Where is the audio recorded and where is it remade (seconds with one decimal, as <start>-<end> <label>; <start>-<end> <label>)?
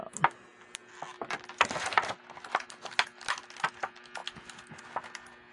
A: 0.0-5.5 recorded